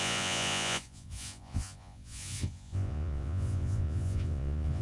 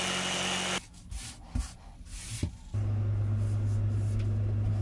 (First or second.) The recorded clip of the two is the second